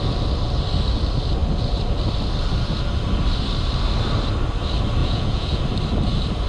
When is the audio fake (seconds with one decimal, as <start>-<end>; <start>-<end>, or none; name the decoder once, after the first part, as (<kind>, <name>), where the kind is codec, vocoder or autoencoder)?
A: 5.0-5.6 (vocoder, Vocos)